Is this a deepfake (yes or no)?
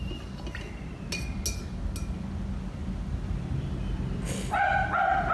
no